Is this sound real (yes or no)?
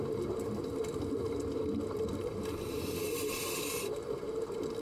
yes